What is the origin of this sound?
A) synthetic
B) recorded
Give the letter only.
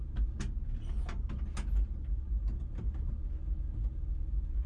B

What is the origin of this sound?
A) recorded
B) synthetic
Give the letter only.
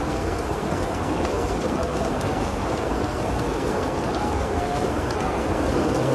B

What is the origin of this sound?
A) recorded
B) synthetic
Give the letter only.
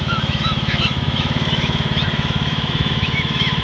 B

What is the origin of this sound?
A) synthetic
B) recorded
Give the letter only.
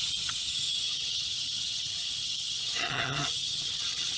A